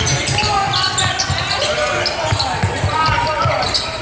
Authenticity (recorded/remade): recorded